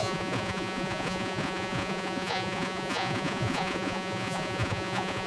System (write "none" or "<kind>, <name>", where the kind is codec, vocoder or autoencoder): vocoder, Vocos